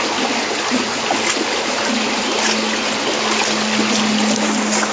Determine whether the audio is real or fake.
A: real